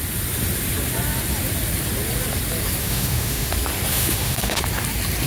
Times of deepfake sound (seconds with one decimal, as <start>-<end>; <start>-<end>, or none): 2.8-3.5; 3.9-4.6

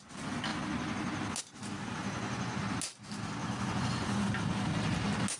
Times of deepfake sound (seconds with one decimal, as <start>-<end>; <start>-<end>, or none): 2.0-2.6; 3.4-4.3

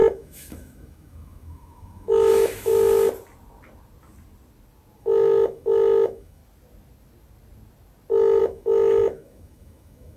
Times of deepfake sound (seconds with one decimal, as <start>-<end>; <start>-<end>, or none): 0.0-2.7; 5.0-6.4; 8.4-10.2

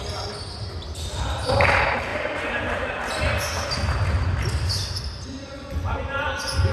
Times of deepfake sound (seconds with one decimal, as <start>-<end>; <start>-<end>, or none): 2.1-3.2